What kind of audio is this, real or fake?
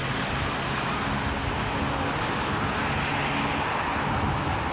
real